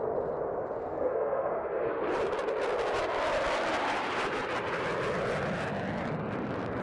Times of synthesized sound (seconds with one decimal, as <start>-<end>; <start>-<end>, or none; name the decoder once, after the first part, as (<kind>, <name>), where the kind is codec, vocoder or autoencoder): 0.8-2.0 (codec, SNAC)